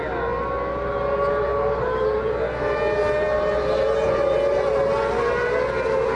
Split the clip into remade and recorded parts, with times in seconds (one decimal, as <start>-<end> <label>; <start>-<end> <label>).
0.0-6.2 recorded